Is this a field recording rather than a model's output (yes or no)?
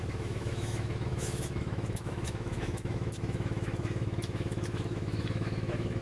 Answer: no